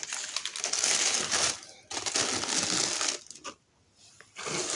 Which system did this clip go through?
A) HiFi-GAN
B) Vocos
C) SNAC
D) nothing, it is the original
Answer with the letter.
D